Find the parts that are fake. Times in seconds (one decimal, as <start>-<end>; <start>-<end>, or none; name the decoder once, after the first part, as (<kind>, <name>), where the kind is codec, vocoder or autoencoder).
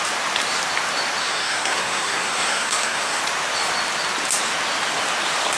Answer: 1.2-3.2 (codec, SNAC)